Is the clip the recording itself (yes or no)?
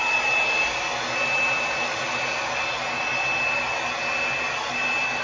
yes